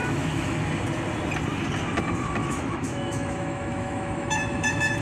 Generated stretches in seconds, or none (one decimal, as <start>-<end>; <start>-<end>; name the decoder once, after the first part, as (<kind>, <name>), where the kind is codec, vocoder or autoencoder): 0.0-0.7 (autoencoder, DAC-VAE); 2.4-5.0